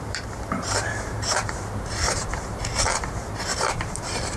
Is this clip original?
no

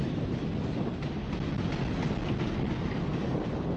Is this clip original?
yes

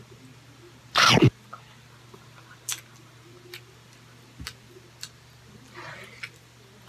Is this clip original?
yes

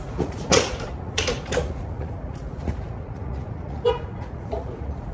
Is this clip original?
no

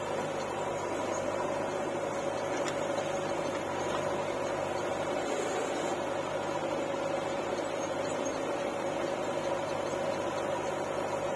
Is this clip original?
yes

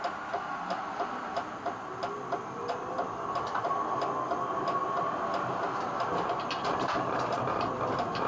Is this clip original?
yes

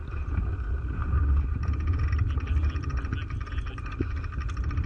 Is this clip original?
yes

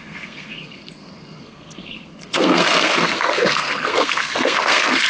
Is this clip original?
no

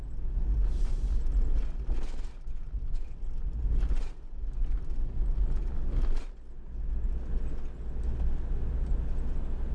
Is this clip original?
yes